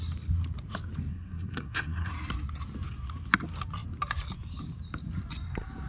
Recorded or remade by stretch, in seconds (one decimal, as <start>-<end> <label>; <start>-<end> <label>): 0.0-1.1 recorded; 1.1-2.1 remade; 2.1-5.9 recorded